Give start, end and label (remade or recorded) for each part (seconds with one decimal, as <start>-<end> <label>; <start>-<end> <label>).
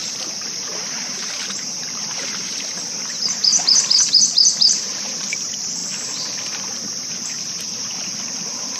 0.0-3.5 remade; 3.5-4.7 recorded; 4.7-5.8 remade; 5.8-7.0 recorded; 7.0-8.8 remade